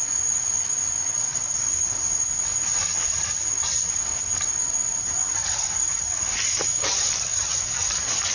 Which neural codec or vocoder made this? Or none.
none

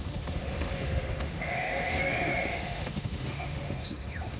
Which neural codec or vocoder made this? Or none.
autoencoder, DAC-VAE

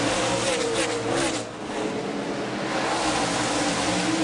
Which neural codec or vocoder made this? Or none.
none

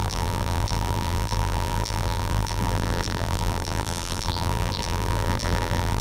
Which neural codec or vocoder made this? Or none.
vocoder, BigVGAN v2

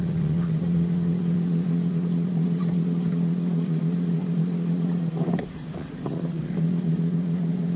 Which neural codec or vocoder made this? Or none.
vocoder, Vocos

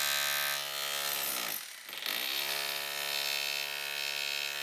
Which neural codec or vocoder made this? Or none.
none